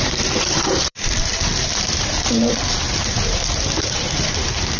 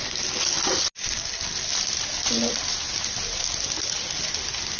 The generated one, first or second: first